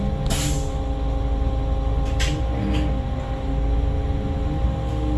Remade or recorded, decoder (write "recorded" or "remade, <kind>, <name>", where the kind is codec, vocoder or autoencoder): recorded